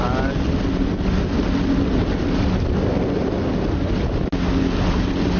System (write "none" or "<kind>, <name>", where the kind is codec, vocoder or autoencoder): none